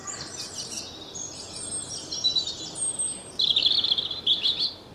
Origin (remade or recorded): recorded